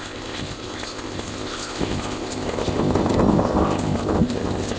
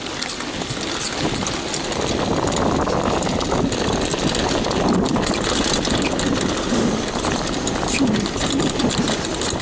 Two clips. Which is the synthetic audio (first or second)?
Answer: first